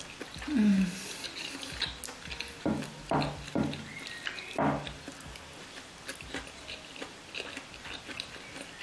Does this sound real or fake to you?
real